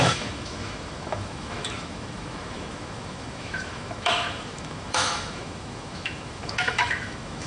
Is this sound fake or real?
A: fake